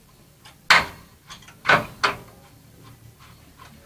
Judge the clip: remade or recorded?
recorded